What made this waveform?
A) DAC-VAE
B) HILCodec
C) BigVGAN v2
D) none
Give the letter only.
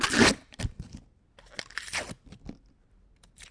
D